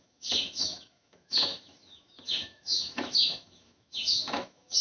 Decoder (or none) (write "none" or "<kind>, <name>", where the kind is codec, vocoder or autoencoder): autoencoder, DAC-VAE